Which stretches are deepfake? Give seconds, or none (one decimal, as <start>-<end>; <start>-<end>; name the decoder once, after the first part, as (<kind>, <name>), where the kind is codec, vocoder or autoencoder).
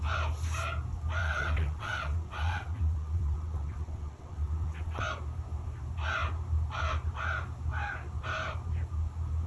1.2-5.0 (vocoder, WaveNeXt)